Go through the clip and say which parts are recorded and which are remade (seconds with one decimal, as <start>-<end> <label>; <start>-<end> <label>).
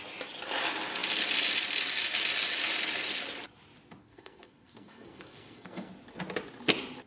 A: 0.0-4.0 recorded; 4.0-5.9 remade; 5.9-7.1 recorded